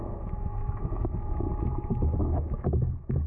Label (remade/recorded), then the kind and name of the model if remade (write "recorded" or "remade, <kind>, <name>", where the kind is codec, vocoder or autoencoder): remade, autoencoder, DAC-VAE